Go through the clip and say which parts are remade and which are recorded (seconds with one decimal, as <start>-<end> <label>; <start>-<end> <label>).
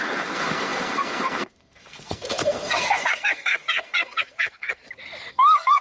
0.0-4.8 remade; 4.8-5.3 recorded; 5.3-5.8 remade